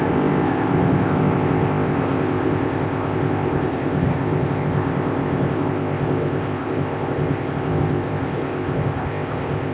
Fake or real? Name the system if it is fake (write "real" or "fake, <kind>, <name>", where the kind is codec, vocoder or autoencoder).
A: fake, codec, ZipCodec